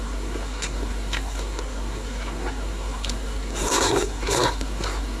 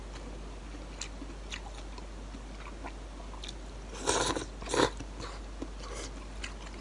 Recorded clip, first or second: second